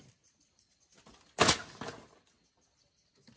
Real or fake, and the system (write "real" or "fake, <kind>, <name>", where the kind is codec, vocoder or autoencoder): real